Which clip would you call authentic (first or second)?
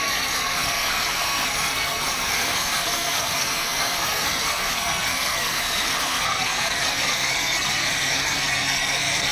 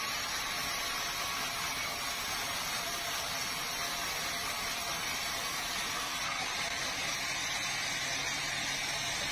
second